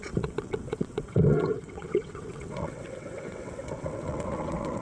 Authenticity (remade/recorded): remade